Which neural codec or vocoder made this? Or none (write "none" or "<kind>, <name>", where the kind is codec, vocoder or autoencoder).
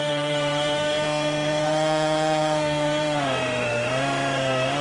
autoencoder, DAC-VAE